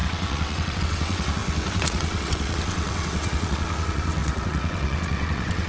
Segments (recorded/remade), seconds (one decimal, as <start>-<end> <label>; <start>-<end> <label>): 0.0-5.7 remade